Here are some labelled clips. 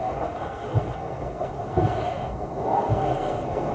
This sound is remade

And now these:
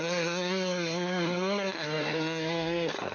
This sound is remade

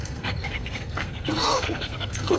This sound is remade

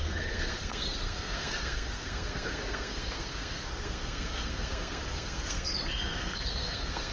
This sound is remade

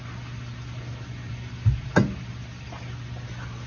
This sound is recorded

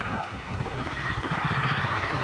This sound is remade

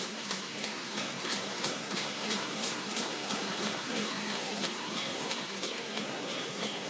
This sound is remade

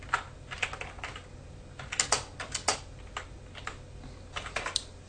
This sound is recorded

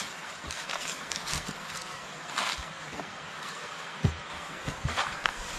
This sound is remade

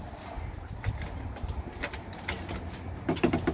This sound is recorded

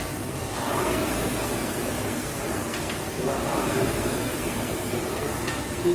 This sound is remade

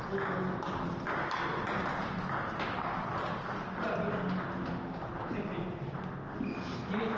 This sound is recorded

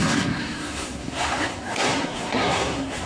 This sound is remade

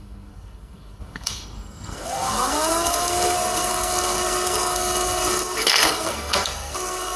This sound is remade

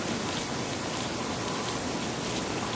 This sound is recorded